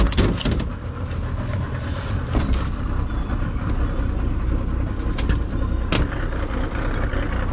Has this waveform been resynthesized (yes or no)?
no